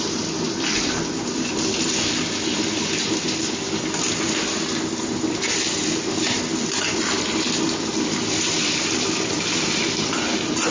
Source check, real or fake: real